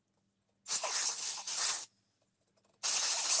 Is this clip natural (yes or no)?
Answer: yes